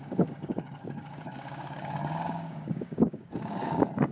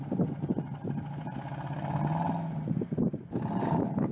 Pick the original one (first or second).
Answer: second